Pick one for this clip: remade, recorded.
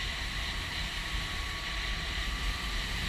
remade